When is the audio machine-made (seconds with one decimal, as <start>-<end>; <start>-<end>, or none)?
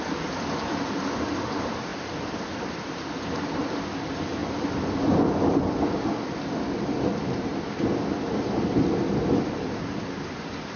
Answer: 0.0-7.5; 8.8-10.8